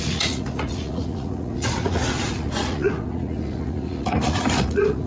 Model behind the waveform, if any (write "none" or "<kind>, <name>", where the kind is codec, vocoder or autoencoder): vocoder, Vocos